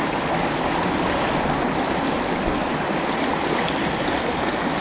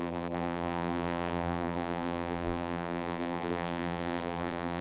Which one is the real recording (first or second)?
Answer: first